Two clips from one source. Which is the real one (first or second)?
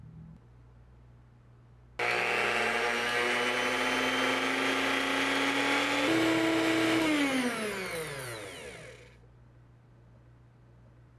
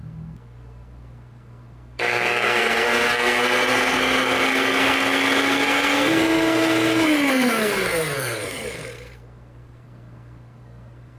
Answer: first